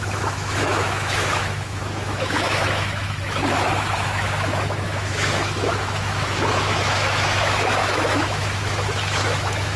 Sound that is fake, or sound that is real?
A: fake